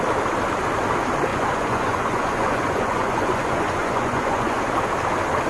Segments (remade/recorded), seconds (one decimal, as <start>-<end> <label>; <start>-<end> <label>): 0.0-1.3 recorded; 1.3-4.6 remade; 4.6-5.5 recorded